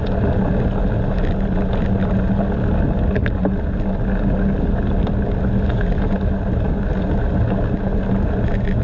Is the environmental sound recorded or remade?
recorded